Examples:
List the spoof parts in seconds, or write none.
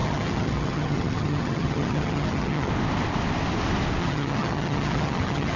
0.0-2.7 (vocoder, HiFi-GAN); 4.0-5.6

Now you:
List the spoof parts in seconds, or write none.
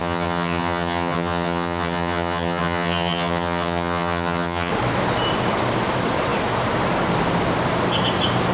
0.0-4.7 (vocoder, HiFi-GAN)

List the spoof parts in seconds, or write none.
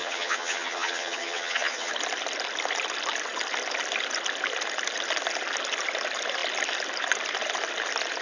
0.0-1.9 (vocoder, HiFi-GAN)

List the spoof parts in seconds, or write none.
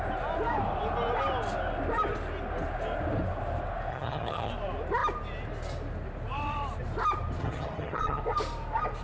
3.9-4.5 (vocoder, HiFi-GAN); 7.4-8.2